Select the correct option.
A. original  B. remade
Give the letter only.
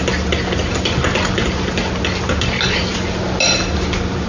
A